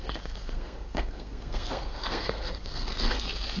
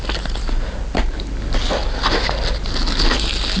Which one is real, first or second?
second